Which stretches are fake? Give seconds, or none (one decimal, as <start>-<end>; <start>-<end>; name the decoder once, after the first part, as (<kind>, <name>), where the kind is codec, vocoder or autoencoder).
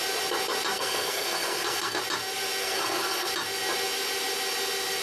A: 0.7-2.0 (codec, SNAC); 2.6-3.3